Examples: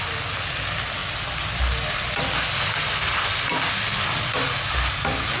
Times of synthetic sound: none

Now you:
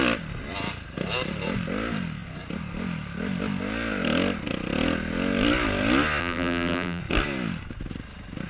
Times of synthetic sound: 6.2-7.0 (vocoder, BigVGAN v2)

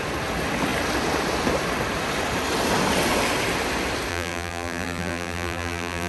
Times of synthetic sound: 4.1-6.1 (vocoder, BigVGAN v2)